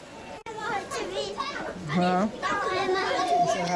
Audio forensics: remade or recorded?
remade